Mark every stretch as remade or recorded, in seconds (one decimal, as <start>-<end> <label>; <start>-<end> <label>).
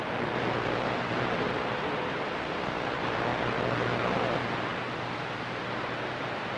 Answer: 0.0-6.6 recorded